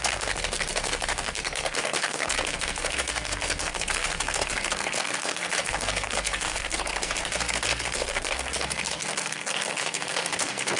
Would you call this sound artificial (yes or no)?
yes